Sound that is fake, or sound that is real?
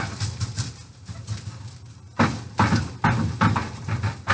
real